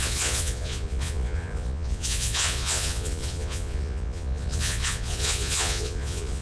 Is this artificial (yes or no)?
yes